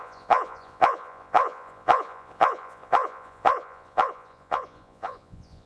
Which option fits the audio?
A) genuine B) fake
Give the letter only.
B